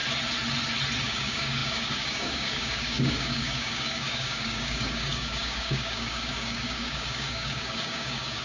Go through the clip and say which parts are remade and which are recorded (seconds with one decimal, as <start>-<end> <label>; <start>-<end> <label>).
0.0-1.0 recorded; 1.0-8.4 remade